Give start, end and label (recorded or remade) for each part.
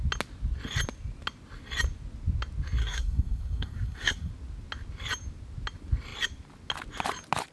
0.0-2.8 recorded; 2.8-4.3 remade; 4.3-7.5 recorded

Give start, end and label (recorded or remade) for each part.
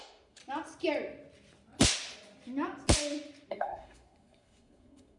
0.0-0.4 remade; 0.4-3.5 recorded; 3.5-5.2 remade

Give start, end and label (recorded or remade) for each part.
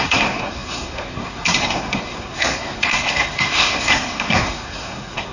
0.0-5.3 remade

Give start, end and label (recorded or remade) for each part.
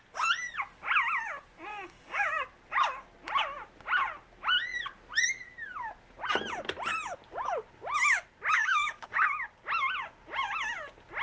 0.0-1.7 recorded; 1.7-2.3 remade; 2.3-8.6 recorded; 8.6-9.2 remade; 9.2-11.2 recorded